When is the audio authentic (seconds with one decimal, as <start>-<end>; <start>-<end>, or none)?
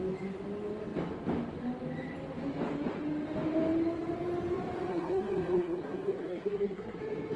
0.0-4.9; 7.0-7.4